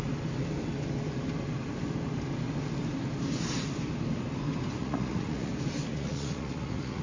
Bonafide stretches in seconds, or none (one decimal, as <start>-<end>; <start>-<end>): 0.0-4.8; 5.5-5.9